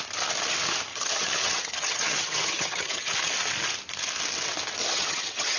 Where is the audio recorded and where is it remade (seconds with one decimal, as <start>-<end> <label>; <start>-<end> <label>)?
0.0-0.9 recorded; 0.9-3.1 remade; 3.1-4.8 recorded; 4.8-5.6 remade